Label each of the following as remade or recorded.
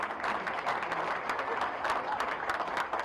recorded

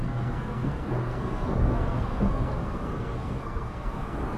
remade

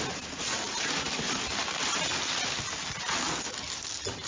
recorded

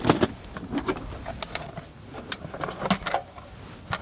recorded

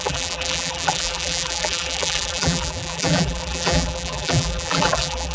remade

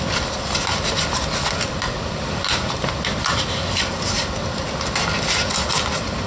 recorded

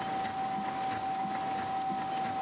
recorded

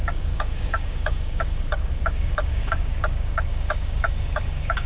remade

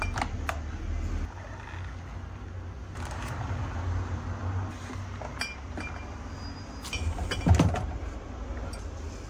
recorded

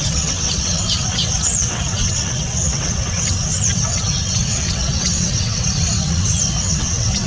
remade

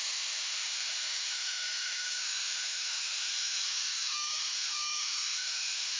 remade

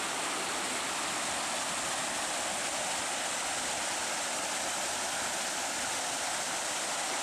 recorded